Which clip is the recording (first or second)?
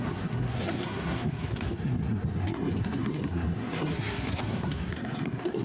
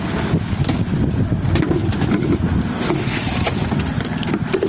second